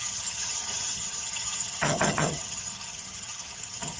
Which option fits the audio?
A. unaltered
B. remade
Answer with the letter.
B